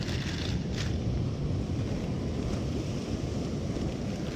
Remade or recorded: recorded